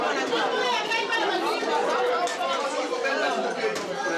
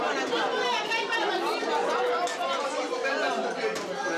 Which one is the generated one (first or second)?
first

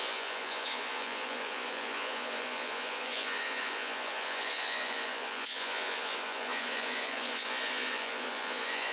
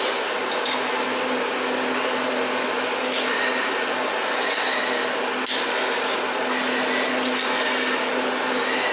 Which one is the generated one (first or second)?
first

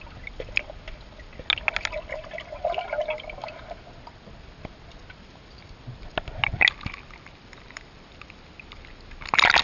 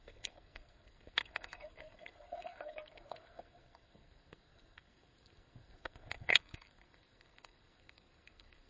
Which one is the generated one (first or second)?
second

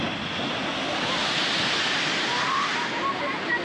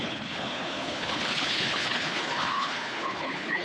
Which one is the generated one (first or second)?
second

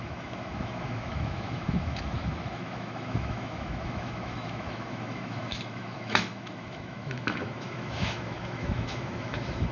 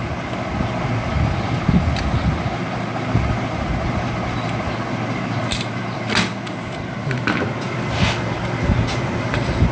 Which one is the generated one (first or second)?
first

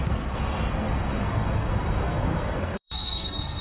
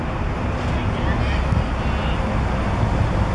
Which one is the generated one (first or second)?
first